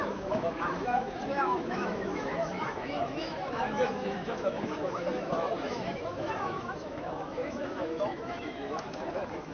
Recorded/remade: remade